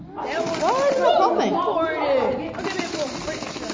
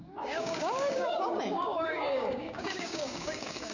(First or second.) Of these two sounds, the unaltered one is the first